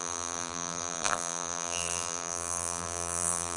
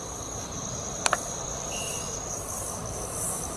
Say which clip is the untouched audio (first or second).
second